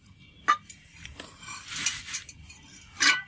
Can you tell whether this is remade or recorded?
recorded